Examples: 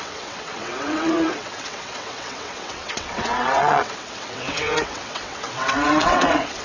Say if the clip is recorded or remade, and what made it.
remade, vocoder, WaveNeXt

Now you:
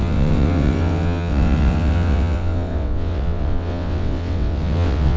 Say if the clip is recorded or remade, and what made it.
remade, vocoder, WaveNeXt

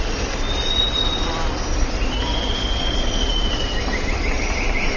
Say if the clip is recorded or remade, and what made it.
recorded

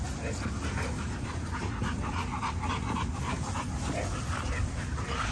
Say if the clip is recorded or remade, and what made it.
recorded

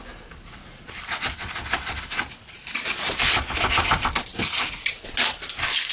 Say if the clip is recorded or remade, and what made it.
recorded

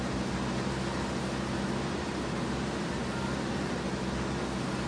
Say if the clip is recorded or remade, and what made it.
recorded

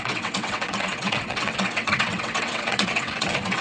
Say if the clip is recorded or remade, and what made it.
remade, vocoder, WaveNeXt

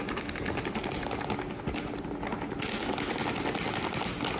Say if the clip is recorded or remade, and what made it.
recorded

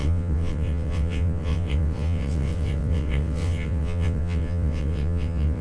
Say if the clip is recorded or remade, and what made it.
remade, vocoder, WaveNeXt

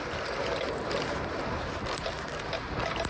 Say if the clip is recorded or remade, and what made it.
recorded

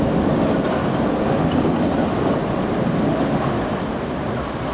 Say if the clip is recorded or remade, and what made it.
recorded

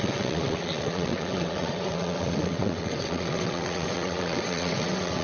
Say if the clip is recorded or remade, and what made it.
remade, vocoder, WaveNeXt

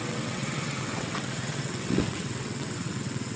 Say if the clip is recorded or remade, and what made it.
remade, vocoder, WaveNeXt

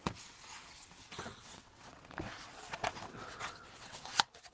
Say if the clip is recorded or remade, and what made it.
remade, vocoder, WaveNeXt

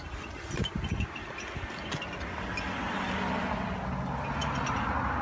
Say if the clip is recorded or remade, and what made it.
recorded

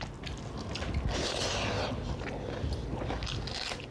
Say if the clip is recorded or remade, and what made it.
recorded